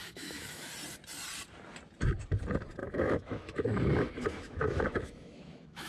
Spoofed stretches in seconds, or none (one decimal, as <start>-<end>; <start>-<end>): 0.0-0.7; 2.8-3.9; 4.3-5.9